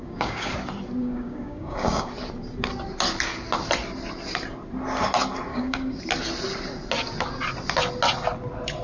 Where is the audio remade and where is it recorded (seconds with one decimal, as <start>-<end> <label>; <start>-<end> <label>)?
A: 0.0-0.5 remade; 0.5-1.0 recorded; 1.0-2.1 remade; 2.1-5.5 recorded; 5.5-6.0 remade; 6.0-8.8 recorded